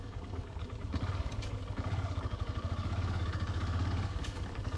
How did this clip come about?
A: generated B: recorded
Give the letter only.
A